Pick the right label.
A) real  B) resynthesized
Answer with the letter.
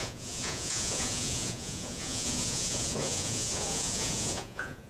B